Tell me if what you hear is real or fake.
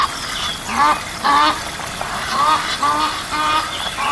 real